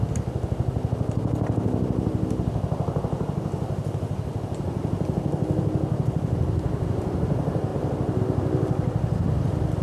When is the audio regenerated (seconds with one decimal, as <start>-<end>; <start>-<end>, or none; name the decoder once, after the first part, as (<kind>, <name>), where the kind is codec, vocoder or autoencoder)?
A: none